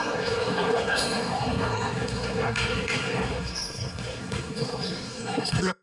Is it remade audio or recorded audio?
remade